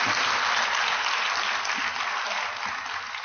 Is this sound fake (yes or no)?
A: no